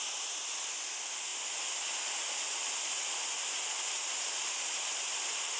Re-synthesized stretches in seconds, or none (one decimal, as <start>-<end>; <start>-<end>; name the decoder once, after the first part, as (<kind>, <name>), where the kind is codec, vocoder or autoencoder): none